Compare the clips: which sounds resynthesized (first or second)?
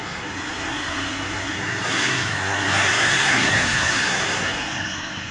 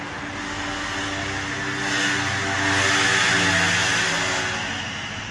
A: first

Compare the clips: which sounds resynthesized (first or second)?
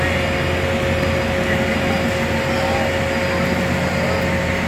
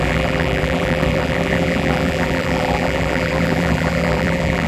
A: second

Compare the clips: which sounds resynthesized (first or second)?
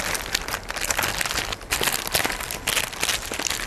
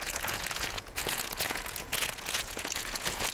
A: second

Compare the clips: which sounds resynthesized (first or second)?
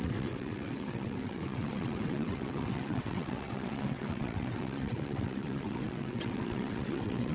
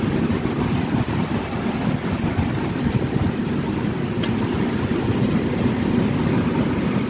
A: first